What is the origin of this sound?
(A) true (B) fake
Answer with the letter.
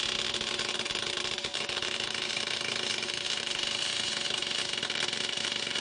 A